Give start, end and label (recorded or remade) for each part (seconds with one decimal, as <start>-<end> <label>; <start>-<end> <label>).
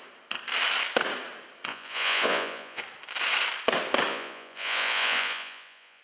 0.0-1.7 recorded; 1.7-2.8 remade; 2.8-4.1 recorded; 4.1-6.0 remade